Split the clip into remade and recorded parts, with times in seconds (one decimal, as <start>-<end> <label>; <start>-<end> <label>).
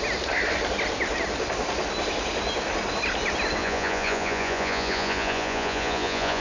0.0-3.6 recorded; 3.6-6.4 remade